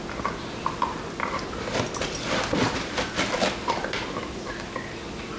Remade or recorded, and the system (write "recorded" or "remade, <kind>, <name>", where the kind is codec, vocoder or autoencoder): recorded